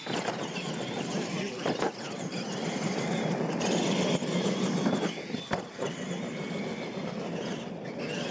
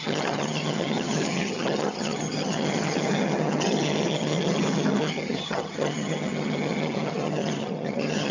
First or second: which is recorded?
first